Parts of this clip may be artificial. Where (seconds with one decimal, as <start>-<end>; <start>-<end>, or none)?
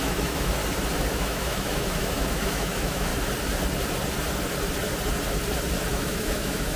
0.0-0.6; 1.1-3.1; 5.9-6.8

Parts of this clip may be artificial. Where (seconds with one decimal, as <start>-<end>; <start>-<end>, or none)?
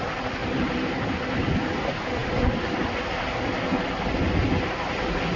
0.4-1.2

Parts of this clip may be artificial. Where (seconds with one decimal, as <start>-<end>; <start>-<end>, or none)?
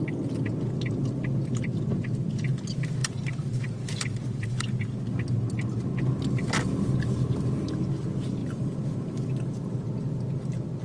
3.0-4.6